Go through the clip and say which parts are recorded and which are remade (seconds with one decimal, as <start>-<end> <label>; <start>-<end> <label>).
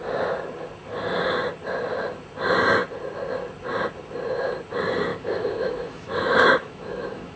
0.0-5.1 recorded; 5.1-7.4 remade